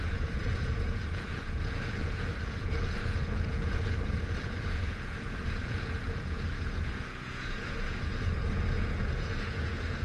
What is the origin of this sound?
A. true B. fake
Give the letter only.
B